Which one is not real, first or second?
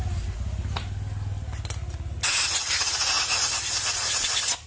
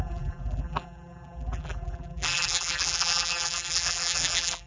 second